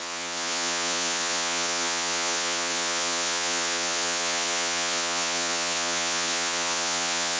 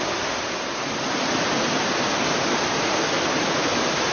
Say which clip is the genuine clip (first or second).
second